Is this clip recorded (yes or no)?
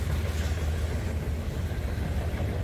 yes